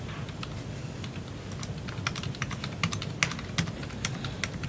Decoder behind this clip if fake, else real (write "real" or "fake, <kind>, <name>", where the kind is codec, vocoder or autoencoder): real